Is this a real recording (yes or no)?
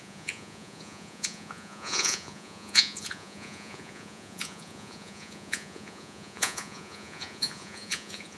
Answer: no